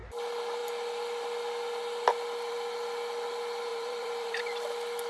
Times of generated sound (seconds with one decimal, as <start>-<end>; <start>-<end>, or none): 3.7-4.4